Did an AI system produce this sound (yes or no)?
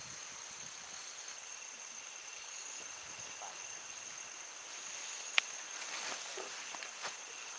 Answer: no